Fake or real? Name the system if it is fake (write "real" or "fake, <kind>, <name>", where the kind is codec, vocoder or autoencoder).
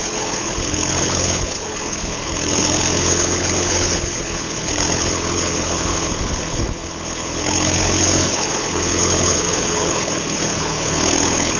fake, codec, HILCodec